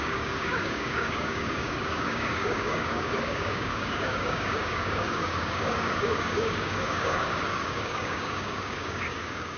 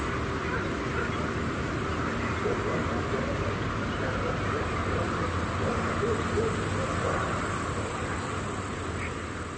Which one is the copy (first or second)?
first